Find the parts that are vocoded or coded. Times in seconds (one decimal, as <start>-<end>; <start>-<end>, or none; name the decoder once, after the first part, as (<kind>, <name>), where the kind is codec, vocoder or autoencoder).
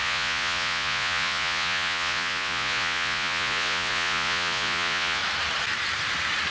0.0-5.2 (vocoder, Vocos)